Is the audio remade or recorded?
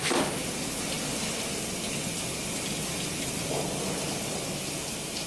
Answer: recorded